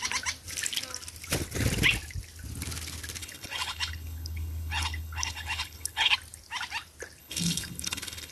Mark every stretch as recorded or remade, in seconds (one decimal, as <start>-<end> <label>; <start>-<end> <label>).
0.0-3.2 recorded; 3.2-6.1 remade; 6.1-7.2 recorded; 7.2-8.3 remade